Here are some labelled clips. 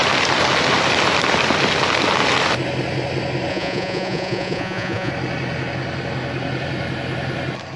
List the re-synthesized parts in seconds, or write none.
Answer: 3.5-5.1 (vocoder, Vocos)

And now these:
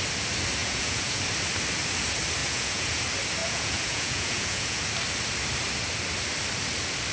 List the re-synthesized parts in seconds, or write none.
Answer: 0.6-1.2 (vocoder, Vocos); 2.4-3.0; 3.4-4.8

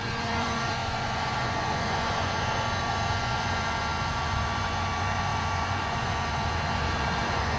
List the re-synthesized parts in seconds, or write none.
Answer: 0.0-7.6 (vocoder, Vocos)

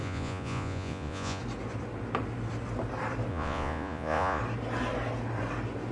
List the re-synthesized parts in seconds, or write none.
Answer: 0.0-1.4 (vocoder, Vocos); 3.3-4.4